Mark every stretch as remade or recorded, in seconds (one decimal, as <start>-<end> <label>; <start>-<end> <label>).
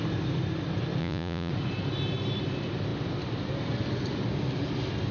0.0-1.0 recorded; 1.0-1.5 remade; 1.5-5.1 recorded